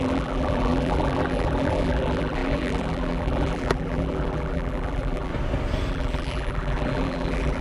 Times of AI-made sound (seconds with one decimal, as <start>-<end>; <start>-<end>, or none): 0.0-5.3; 5.9-7.6